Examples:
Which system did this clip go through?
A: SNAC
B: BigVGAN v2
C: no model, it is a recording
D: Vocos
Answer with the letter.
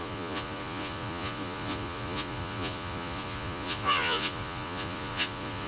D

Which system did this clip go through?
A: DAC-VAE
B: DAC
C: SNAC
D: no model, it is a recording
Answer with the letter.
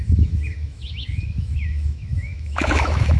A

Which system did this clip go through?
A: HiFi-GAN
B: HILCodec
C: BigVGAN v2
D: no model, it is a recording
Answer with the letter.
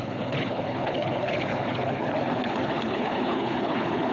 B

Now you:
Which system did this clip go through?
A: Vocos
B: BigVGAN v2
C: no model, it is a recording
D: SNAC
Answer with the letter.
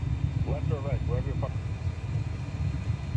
C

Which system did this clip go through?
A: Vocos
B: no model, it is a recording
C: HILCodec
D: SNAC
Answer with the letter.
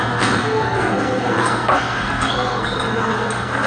D